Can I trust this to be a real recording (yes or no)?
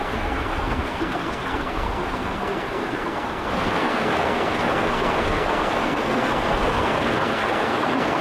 no